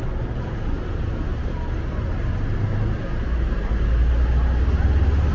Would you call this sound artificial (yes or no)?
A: no